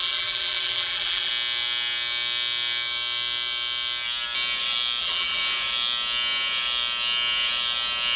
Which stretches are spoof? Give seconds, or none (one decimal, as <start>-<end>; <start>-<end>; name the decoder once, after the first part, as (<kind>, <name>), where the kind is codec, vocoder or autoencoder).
0.0-1.3 (vocoder, BigVGAN v2); 5.0-5.4